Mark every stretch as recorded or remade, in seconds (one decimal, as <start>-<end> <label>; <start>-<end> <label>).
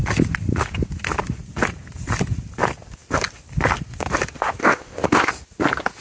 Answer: 0.0-4.6 recorded; 4.6-5.3 remade; 5.3-6.0 recorded